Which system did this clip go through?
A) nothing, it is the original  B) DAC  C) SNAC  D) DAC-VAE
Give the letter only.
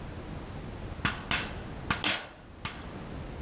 A